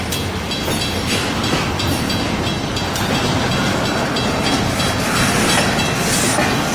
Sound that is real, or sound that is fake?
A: real